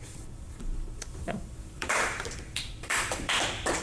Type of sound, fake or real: fake